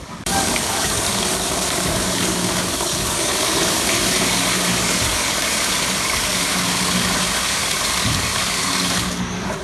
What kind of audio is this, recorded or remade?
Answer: remade